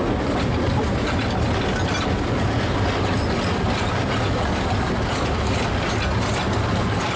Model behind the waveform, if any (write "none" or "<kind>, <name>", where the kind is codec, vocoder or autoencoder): none